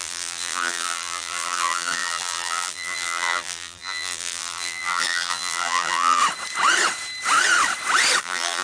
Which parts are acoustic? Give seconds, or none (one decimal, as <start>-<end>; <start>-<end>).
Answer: 6.2-8.2